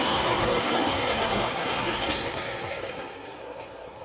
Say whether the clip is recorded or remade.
remade